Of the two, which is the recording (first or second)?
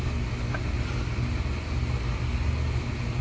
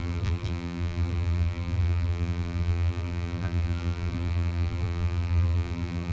first